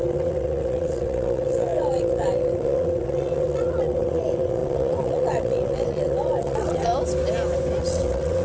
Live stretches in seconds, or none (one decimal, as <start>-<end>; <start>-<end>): 6.9-7.8